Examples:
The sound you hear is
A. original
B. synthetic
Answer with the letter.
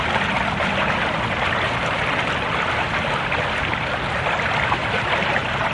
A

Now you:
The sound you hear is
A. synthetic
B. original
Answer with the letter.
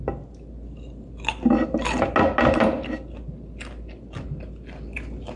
B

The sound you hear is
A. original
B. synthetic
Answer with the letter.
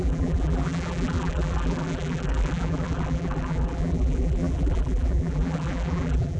B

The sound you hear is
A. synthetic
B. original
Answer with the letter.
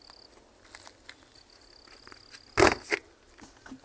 B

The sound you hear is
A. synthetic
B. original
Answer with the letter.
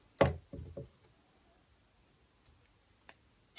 B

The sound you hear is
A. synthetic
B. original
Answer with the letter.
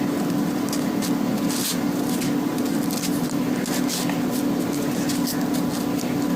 B